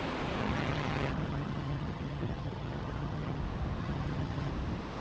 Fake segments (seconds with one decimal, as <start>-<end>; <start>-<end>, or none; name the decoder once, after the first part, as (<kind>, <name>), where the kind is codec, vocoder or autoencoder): 0.4-3.4 (vocoder, HiFi-GAN); 3.8-4.5